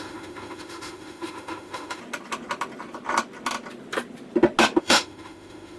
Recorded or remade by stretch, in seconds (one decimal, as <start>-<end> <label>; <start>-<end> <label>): 0.0-2.0 remade; 2.0-4.8 recorded; 4.8-5.8 remade